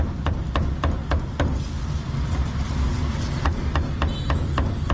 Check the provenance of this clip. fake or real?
real